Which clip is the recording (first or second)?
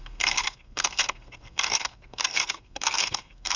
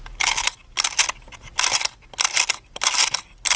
second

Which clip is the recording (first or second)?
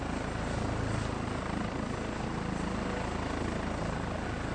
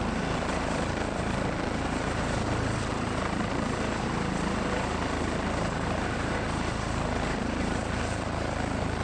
first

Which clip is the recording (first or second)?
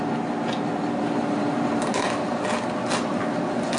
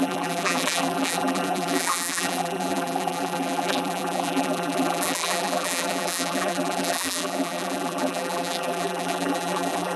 first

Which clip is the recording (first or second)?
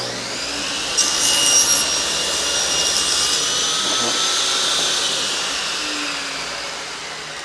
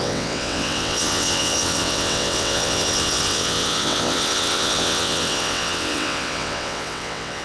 first